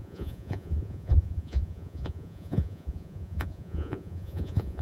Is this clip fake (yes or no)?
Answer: yes